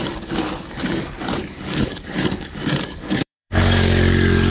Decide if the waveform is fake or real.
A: fake